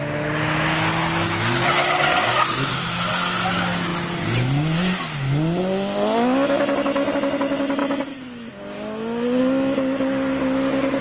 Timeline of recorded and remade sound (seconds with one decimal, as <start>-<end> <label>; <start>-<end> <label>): 0.0-2.3 recorded; 2.3-3.1 remade; 3.1-11.0 recorded